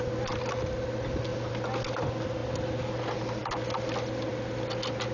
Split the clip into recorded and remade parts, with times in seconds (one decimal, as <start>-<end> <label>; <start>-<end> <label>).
0.0-5.1 recorded